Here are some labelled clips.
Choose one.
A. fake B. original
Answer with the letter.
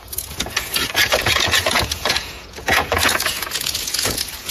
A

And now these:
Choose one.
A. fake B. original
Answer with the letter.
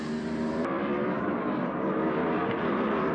A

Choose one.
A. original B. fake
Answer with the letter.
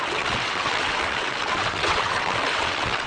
B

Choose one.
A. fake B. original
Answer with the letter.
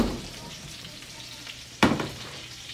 A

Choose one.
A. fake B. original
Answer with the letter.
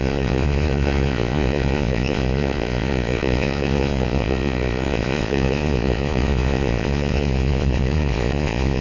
A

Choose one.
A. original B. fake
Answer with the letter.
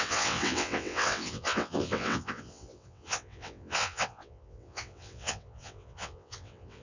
B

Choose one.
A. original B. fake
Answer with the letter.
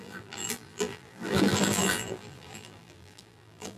B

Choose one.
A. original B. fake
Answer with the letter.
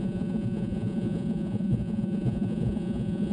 B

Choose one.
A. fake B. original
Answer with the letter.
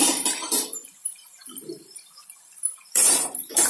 A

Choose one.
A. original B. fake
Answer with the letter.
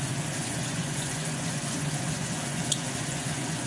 B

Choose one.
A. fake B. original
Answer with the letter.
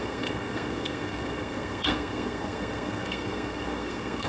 A